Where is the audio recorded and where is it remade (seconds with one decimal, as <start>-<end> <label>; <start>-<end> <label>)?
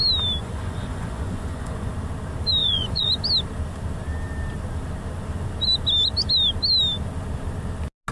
0.0-0.4 recorded; 0.4-1.9 remade; 1.9-2.6 recorded; 2.6-3.1 remade; 3.1-8.1 recorded